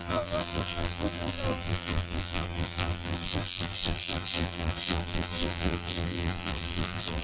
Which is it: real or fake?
fake